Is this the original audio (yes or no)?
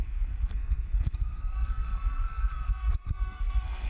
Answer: no